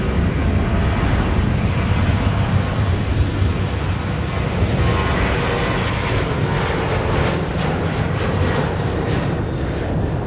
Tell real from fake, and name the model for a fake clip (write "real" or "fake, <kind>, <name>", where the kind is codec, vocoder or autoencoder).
real